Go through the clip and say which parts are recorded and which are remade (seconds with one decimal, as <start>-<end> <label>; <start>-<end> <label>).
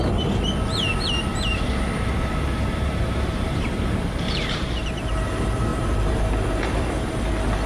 0.0-1.3 recorded; 1.3-5.1 remade; 5.1-5.7 recorded; 5.7-6.8 remade; 6.8-7.7 recorded